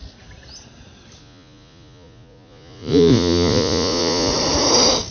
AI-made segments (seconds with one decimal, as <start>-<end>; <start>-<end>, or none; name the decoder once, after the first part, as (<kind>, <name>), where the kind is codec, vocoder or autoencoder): 1.2-4.3 (vocoder, Vocos)